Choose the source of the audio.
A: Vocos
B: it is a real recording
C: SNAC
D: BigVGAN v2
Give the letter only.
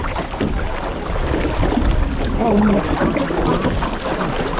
B